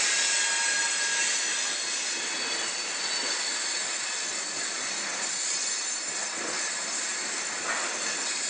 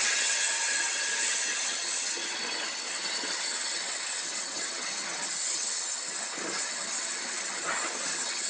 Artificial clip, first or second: second